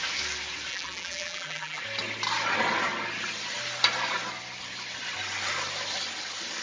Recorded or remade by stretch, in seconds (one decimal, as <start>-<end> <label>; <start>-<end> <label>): 0.0-0.7 recorded; 0.7-1.8 remade; 1.8-6.6 recorded